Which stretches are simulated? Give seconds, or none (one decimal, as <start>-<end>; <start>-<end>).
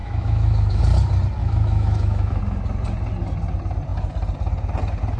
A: 0.0-0.8; 1.4-2.4